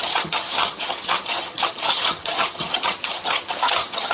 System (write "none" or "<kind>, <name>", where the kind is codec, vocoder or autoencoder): vocoder, HiFi-GAN